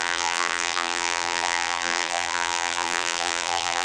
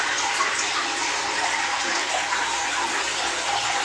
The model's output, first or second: first